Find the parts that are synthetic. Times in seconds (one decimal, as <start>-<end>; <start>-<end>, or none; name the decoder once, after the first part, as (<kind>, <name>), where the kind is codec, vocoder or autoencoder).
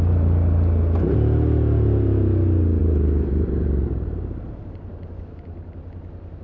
2.8-5.8 (vocoder, BigVGAN v2)